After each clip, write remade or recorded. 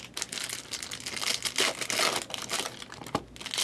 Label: recorded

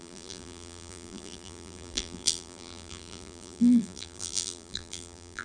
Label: remade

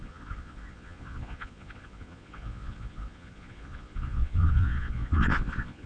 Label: remade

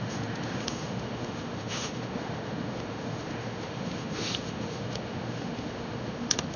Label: remade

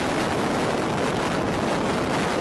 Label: recorded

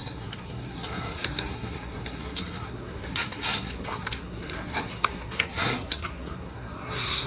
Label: remade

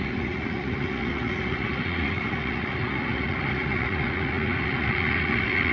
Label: remade